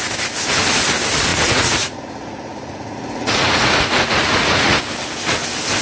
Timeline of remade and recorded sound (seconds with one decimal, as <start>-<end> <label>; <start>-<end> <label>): 0.0-1.3 recorded; 1.3-4.8 remade; 4.8-5.8 recorded